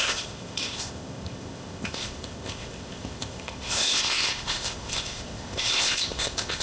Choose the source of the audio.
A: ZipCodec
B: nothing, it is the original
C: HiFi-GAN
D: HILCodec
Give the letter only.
A